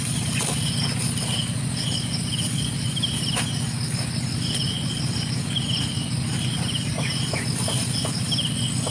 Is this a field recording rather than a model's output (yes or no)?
yes